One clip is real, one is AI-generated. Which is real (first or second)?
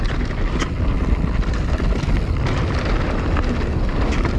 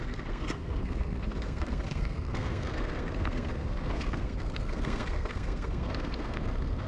first